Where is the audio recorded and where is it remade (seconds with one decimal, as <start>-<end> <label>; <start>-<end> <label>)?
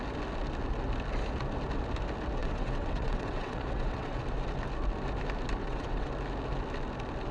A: 0.0-2.4 recorded; 2.4-4.2 remade; 4.2-5.6 recorded; 5.6-6.1 remade; 6.1-7.3 recorded